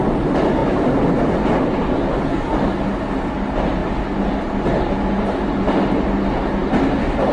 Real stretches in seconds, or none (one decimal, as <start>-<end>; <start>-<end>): 0.0-7.3